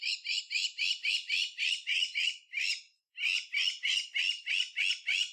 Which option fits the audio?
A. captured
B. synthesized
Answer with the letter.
A